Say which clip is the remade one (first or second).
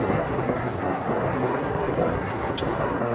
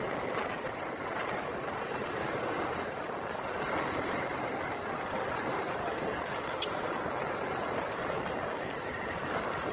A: first